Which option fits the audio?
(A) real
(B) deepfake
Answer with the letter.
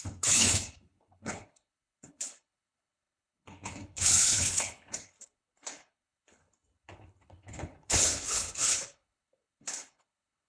B